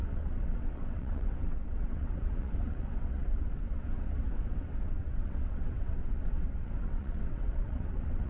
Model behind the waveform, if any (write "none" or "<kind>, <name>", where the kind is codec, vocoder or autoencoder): vocoder, WaveNeXt